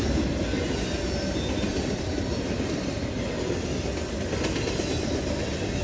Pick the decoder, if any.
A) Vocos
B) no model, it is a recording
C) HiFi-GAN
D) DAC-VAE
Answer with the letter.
B